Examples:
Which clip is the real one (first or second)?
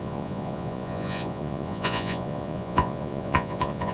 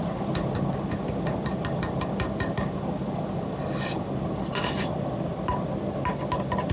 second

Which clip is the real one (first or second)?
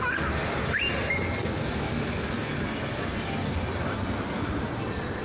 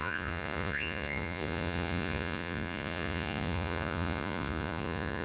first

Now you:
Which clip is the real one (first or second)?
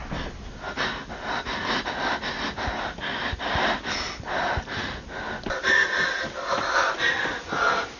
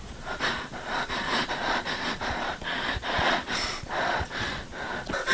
first